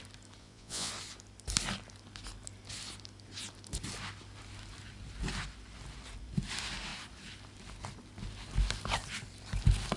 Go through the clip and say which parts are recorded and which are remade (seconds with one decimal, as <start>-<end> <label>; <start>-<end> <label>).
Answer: 0.0-0.4 recorded; 0.4-0.9 remade; 0.9-10.0 recorded